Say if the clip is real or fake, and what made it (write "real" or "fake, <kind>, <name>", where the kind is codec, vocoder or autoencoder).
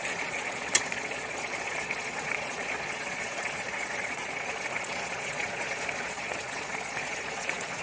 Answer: fake, vocoder, Vocos